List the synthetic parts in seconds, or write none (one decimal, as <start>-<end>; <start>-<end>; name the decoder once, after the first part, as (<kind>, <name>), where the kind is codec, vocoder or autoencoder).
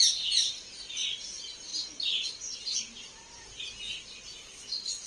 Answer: none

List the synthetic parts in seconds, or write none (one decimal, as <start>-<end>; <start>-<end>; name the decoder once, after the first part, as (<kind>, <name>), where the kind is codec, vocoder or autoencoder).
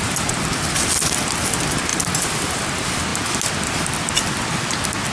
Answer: 1.9-2.6 (vocoder, BigVGAN v2)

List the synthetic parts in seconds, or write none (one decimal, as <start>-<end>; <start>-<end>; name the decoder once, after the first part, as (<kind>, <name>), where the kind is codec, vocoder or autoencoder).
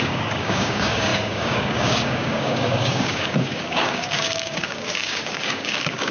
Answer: 0.0-6.1 (codec, DAC)